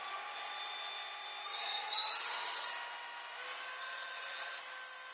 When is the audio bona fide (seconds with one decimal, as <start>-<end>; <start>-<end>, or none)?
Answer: 0.0-1.5; 2.7-3.8; 4.6-5.1

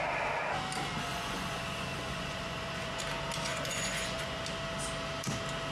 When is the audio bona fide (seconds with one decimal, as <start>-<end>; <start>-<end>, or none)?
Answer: 0.0-1.1; 3.0-3.5; 4.4-5.7

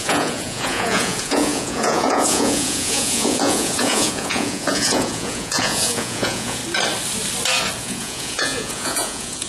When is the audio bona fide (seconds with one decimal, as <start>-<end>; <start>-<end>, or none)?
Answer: 6.6-7.8

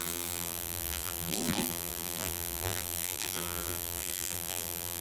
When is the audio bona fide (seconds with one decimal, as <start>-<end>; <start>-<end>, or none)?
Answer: none

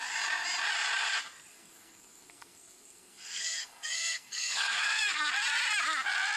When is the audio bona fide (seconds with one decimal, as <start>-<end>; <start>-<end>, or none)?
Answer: 0.0-1.5; 5.3-6.4

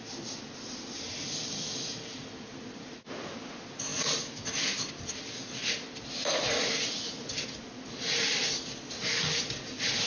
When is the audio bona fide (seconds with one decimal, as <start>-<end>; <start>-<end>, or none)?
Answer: 0.0-10.1